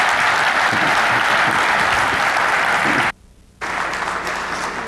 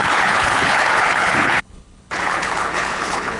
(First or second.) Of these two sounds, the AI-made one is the second